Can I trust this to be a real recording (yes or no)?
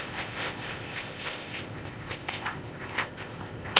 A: no